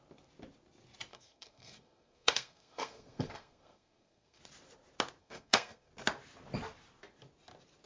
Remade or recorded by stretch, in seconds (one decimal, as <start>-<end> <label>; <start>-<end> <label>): 0.0-1.1 recorded; 1.1-4.4 remade; 4.4-5.2 recorded; 5.2-5.9 remade; 5.9-7.9 recorded